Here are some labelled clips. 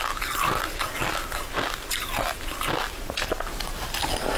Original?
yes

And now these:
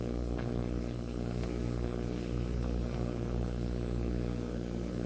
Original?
no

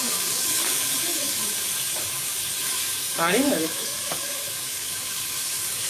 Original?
no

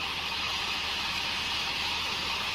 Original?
no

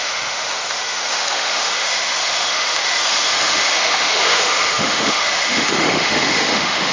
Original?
no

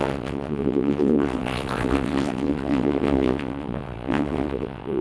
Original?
no